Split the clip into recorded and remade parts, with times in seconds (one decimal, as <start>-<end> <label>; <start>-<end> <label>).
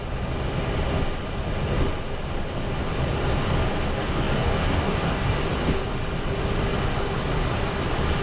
0.0-4.0 recorded; 4.0-5.4 remade; 5.4-8.2 recorded